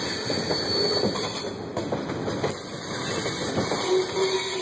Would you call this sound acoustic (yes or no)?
yes